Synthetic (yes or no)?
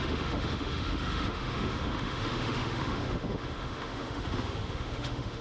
yes